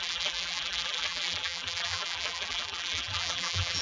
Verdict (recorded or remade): remade